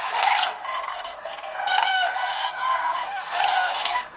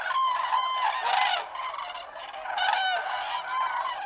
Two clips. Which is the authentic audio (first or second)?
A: second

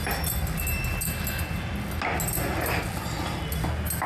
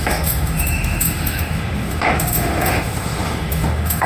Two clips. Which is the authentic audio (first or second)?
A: first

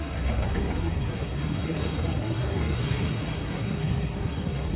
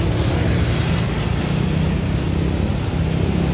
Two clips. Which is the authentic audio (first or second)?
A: second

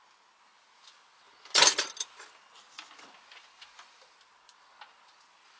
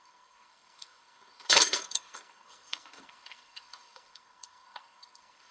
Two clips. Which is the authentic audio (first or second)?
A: first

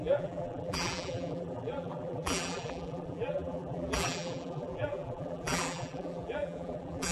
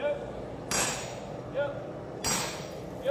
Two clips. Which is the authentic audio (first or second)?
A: second